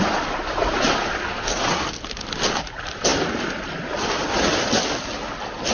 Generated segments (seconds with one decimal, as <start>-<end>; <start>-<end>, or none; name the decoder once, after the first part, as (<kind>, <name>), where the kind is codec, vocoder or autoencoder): none